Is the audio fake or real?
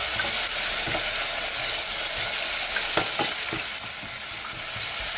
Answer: real